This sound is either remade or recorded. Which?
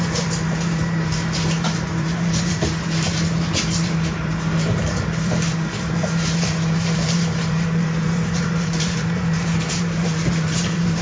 remade